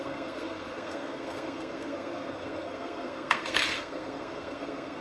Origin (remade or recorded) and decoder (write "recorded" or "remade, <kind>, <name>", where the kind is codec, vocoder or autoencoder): remade, codec, SNAC